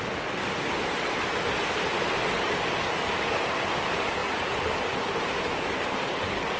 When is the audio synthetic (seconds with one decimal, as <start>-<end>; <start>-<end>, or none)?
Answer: none